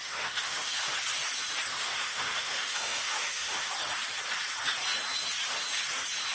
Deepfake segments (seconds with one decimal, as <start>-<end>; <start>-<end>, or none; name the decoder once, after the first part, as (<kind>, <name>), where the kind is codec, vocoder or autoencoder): 0.0-0.7 (autoencoder, DAC-VAE); 1.7-3.7